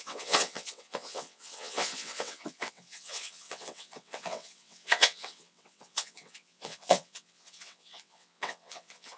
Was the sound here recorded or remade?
remade